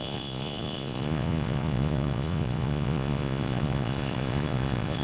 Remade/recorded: remade